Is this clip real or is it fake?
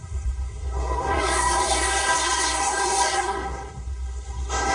fake